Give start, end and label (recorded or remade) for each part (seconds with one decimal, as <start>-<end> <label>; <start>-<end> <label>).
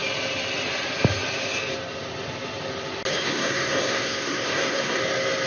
0.0-3.1 recorded; 3.1-5.0 remade; 5.0-5.5 recorded